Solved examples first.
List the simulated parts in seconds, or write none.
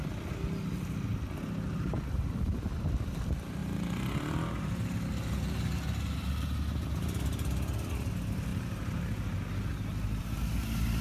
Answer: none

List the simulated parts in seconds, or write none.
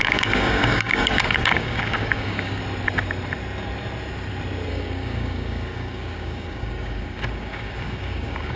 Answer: 0.0-2.6 (codec, DAC); 4.7-8.6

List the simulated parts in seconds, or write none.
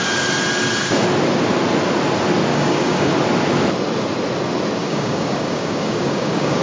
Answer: 2.5-3.1 (codec, DAC); 4.8-6.6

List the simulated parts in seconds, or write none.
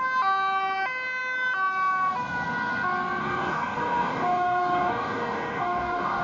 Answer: 3.2-6.2 (codec, DAC)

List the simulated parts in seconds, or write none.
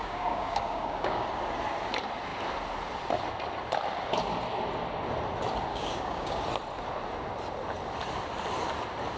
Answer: 0.0-1.3 (codec, DAC); 5.7-6.4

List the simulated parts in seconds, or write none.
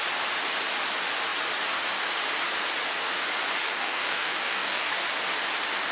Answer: 3.6-4.9 (codec, DAC)